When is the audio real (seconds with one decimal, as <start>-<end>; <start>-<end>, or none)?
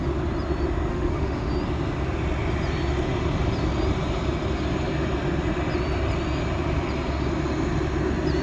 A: 0.0-0.9; 1.5-8.4